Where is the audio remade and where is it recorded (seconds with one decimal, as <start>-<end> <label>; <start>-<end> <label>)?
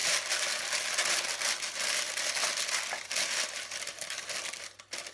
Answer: 0.0-5.1 recorded